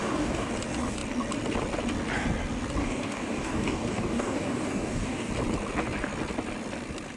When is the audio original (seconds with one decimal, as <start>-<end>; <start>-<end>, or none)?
0.5-2.8; 5.3-7.2